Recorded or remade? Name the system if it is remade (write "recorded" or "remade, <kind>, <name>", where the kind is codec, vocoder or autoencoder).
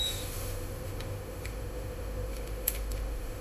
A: remade, autoencoder, DAC-VAE